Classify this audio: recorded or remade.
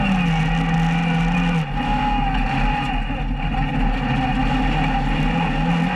recorded